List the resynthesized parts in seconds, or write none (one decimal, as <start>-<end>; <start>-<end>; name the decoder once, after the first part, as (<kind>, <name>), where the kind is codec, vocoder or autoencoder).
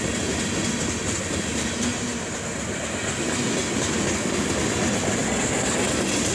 none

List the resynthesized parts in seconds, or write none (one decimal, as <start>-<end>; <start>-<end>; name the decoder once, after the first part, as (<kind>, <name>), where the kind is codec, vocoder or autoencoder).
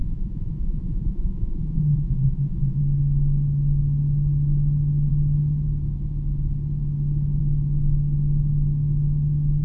0.0-2.8 (vocoder, Vocos)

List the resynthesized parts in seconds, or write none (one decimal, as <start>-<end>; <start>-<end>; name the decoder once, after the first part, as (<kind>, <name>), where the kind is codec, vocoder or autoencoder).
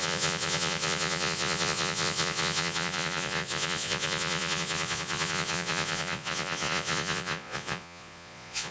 0.0-8.7 (vocoder, Vocos)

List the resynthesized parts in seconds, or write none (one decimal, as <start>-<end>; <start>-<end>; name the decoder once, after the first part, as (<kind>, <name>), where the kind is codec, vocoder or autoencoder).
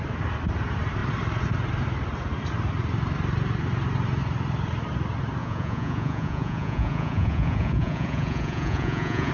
5.4-9.3 (vocoder, Vocos)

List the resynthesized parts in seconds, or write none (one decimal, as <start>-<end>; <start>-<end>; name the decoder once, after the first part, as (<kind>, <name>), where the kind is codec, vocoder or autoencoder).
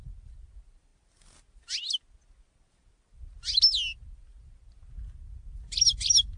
none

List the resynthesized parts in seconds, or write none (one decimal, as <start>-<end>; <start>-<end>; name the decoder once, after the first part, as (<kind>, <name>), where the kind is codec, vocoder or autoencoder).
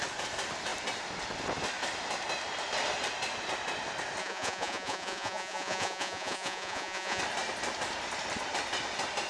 4.2-7.2 (vocoder, Vocos)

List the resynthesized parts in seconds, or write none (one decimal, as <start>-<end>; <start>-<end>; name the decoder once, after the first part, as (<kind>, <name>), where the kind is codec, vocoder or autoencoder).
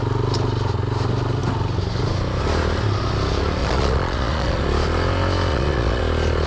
3.6-4.6 (vocoder, Vocos); 5.5-6.0